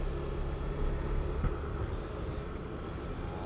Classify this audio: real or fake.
real